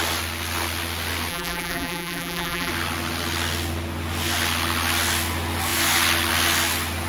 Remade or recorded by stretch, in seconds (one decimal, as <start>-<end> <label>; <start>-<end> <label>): 0.0-1.3 recorded; 1.3-2.7 remade; 2.7-7.1 recorded